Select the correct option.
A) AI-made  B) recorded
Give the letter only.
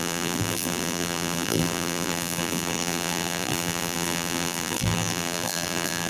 A